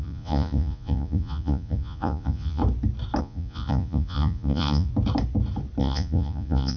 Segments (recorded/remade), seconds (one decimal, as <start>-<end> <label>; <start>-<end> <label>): 0.0-2.6 remade; 2.6-3.2 recorded; 3.2-4.9 remade; 4.9-5.8 recorded; 5.8-6.8 remade